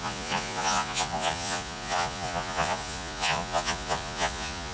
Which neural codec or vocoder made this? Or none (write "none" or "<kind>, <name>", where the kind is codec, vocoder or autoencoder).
vocoder, Vocos